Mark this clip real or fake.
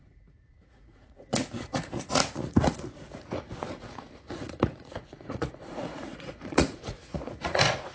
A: fake